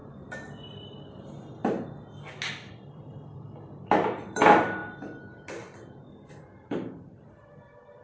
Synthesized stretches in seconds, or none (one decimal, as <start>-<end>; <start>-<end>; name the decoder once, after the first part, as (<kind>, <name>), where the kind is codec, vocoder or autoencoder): 1.1-1.6 (vocoder, BigVGAN v2); 2.7-4.8; 6.3-8.0